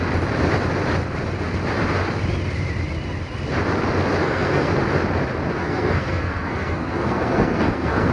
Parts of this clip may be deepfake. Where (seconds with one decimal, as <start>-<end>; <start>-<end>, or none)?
4.2-4.7; 5.6-8.1